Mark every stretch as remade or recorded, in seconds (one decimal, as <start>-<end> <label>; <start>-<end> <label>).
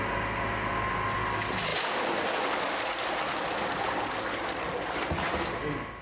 0.0-6.0 recorded